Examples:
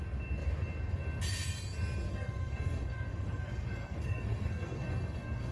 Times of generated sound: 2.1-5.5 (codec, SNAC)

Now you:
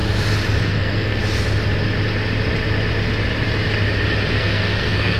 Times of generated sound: 0.6-1.2 (codec, SNAC); 4.3-5.2